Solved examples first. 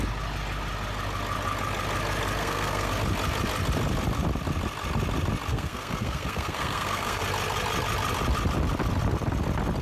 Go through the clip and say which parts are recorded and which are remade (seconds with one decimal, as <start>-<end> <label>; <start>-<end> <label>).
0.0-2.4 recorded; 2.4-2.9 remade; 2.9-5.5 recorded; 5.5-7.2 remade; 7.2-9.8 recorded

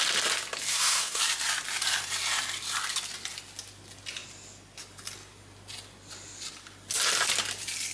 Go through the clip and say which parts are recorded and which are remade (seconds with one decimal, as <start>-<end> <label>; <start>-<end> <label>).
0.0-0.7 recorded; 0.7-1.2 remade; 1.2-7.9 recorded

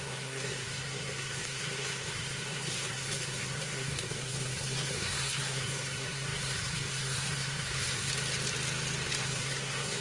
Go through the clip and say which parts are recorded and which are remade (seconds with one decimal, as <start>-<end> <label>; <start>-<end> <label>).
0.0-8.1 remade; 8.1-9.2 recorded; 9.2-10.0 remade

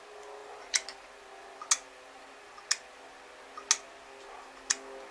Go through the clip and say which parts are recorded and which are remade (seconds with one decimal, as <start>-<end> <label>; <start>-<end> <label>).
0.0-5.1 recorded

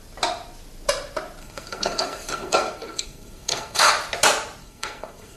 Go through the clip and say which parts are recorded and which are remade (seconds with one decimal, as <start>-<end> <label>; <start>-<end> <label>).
0.0-1.4 recorded; 1.4-3.9 remade; 3.9-4.6 recorded; 4.6-5.4 remade

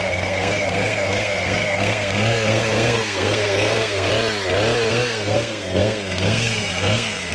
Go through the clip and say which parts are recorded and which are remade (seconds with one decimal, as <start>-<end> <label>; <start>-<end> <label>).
0.0-4.1 remade; 4.1-4.9 recorded; 4.9-7.3 remade